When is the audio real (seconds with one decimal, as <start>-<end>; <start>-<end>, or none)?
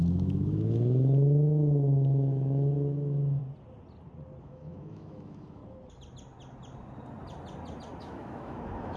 3.4-4.4; 5.6-8.0